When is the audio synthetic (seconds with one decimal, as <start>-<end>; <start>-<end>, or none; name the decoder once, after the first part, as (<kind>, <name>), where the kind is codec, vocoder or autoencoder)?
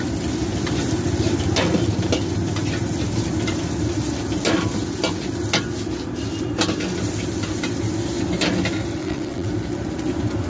9.0-9.5 (vocoder, WaveNeXt)